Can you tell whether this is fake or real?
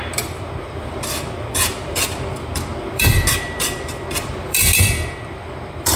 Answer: fake